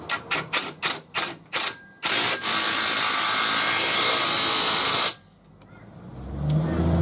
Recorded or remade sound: recorded